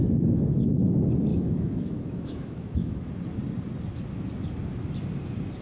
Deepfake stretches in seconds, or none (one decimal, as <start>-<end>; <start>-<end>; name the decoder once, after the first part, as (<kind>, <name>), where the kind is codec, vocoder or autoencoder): 1.3-3.1 (autoencoder, DAC-VAE)